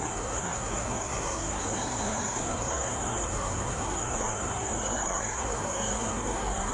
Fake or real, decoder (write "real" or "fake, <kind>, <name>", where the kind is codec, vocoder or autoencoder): fake, codec, SNAC